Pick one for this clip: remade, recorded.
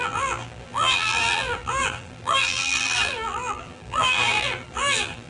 remade